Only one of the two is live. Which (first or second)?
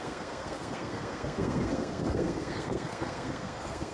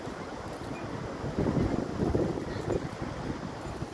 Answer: second